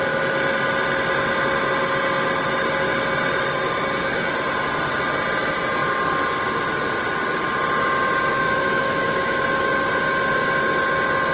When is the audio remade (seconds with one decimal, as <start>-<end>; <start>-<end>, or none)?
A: 8.3-9.9